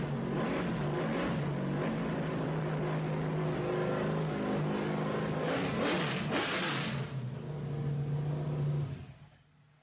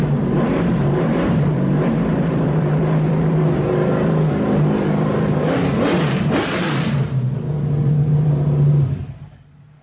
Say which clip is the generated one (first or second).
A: second